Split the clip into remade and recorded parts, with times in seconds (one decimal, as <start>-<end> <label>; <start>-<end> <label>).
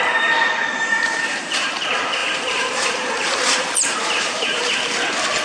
0.0-0.7 recorded; 0.7-1.7 remade; 1.7-2.2 recorded; 2.2-4.6 remade; 4.6-5.4 recorded